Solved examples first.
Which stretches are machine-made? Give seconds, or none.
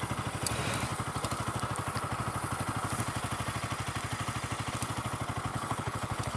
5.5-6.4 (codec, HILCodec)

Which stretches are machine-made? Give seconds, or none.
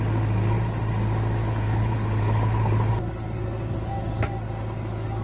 1.4-2.9 (codec, HILCodec)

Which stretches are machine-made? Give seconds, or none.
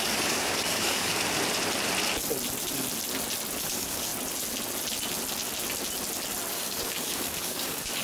0.0-1.1 (codec, DAC); 3.6-4.1; 6.5-8.0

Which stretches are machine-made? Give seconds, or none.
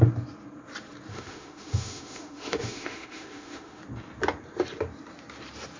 1.1-3.8 (autoencoder, DAC-VAE)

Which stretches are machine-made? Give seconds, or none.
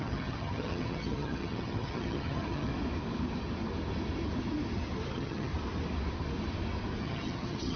0.0-2.7 (vocoder, HiFi-GAN); 5.1-5.5; 7.0-7.8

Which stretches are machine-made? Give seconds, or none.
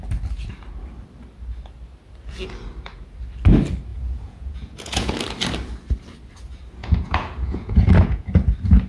3.9-5.1 (vocoder, Vocos); 6.8-8.3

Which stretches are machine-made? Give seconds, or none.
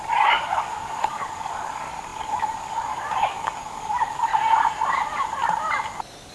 0.0-4.3 (codec, DAC)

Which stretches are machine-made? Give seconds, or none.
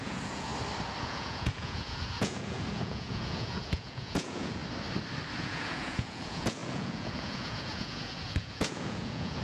0.0-0.5 (vocoder, Vocos); 1.0-4.6; 5.4-9.4